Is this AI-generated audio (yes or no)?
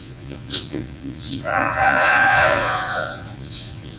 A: yes